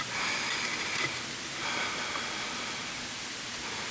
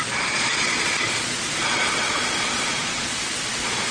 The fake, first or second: second